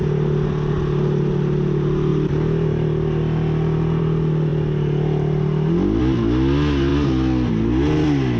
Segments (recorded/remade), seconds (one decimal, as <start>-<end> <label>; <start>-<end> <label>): 0.0-8.4 recorded